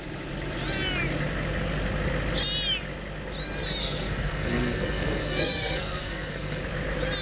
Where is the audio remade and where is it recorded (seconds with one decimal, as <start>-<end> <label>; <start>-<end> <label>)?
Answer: 0.0-3.8 recorded; 3.8-6.6 remade; 6.6-7.2 recorded